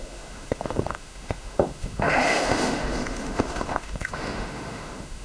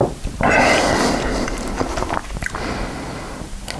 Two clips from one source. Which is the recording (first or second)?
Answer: second